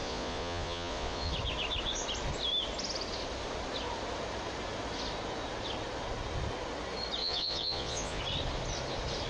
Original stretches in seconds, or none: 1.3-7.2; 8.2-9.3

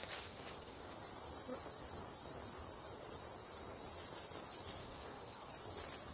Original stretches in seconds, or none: 1.0-4.8; 5.5-6.1

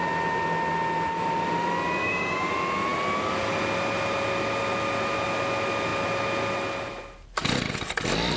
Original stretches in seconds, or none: 0.0-2.0; 2.5-8.4

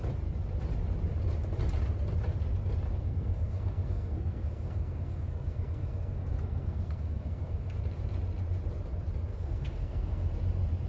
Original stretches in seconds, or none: 0.0-2.9; 7.8-9.3; 10.3-10.9

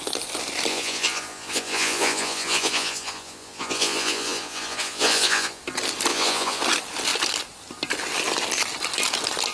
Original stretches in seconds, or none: 0.0-0.7; 5.6-6.1; 6.6-9.5

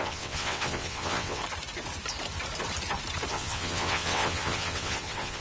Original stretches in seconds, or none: 1.4-3.3